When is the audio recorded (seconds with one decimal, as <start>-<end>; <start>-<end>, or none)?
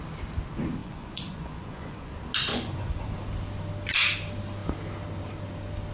0.0-0.8; 2.1-2.5; 3.1-5.9